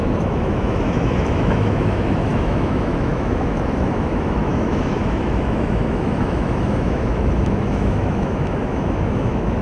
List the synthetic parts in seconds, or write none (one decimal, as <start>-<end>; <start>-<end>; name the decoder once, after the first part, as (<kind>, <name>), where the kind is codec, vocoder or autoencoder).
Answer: 0.0-9.6 (autoencoder, DAC-VAE)